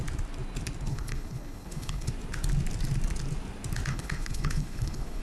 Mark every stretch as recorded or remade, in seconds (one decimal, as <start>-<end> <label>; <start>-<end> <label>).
0.0-0.9 recorded; 0.9-2.1 remade; 2.1-3.9 recorded; 3.9-5.2 remade